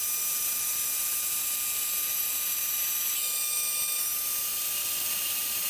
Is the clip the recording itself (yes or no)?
no